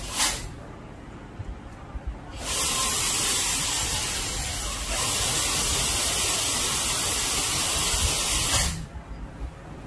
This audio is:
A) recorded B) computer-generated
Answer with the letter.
A